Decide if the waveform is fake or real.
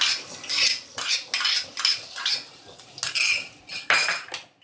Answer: real